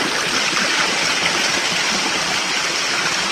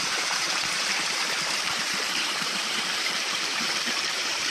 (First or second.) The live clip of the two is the first